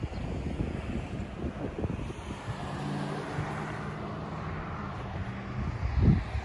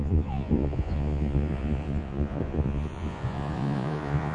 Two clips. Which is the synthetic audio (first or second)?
second